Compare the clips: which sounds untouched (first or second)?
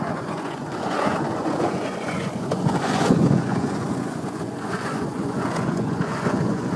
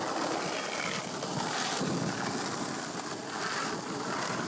second